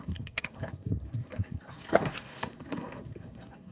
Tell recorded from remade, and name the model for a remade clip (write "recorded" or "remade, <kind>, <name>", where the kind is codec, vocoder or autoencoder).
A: remade, codec, SNAC